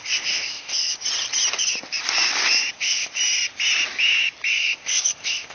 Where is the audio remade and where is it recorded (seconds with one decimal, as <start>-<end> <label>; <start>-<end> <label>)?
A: 0.0-1.0 remade; 1.0-2.7 recorded; 2.7-3.2 remade; 3.2-4.5 recorded; 4.5-5.5 remade

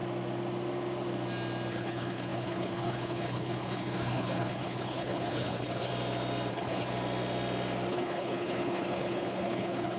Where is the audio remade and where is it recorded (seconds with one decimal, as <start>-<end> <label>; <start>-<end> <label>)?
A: 0.0-1.7 recorded; 1.7-5.9 remade; 5.9-6.5 recorded; 6.5-6.9 remade; 6.9-7.9 recorded; 7.9-10.0 remade

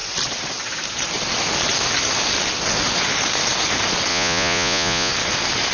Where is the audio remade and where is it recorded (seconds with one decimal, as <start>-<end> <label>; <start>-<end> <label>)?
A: 0.0-4.1 recorded; 4.1-5.1 remade; 5.1-5.7 recorded

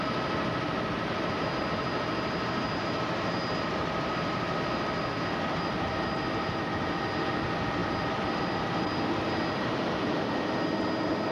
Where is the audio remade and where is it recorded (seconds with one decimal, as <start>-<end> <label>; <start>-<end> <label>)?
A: 0.0-11.3 recorded

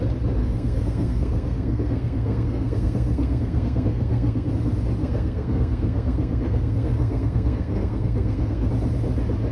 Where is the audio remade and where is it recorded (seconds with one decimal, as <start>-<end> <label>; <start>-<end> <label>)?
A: 0.0-0.4 recorded; 0.4-4.5 remade; 4.5-5.0 recorded; 5.0-8.7 remade; 8.7-9.5 recorded